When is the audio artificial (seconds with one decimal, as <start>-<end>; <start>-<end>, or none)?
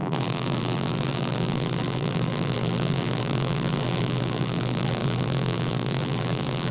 0.0-6.7